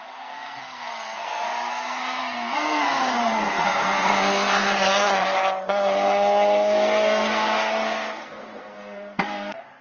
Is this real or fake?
fake